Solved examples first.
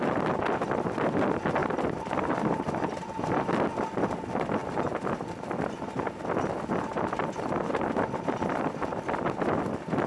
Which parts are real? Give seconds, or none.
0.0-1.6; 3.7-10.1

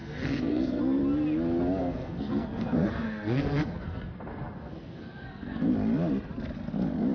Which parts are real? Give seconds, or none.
1.0-1.8; 5.7-7.1

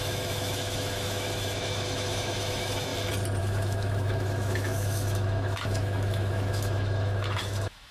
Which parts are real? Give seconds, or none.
2.9-3.4

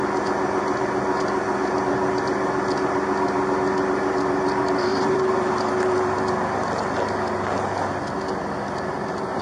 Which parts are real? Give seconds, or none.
0.0-4.9; 5.5-9.4

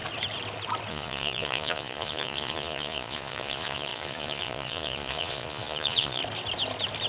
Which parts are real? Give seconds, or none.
0.0-0.9; 6.2-7.1

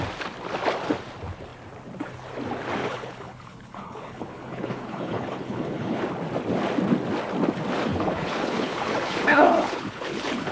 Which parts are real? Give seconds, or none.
0.0-2.8; 6.0-7.9

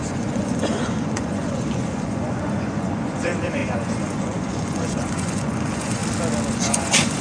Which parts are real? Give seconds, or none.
6.0-6.5

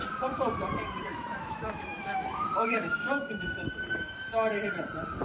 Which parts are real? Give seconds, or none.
0.0-1.1; 4.2-5.2